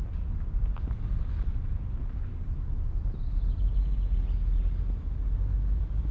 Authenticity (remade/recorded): recorded